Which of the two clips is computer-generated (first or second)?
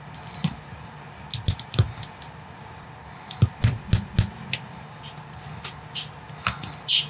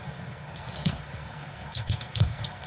second